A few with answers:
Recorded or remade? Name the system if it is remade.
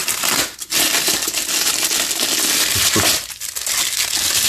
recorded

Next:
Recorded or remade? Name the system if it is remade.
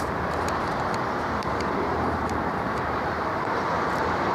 remade, vocoder, BigVGAN v2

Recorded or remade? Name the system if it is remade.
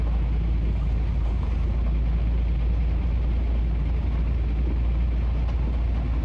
recorded